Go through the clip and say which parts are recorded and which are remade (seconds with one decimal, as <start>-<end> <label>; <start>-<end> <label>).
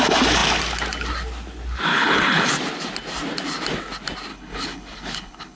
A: 0.0-1.9 recorded; 1.9-2.5 remade; 2.5-4.3 recorded; 4.3-5.6 remade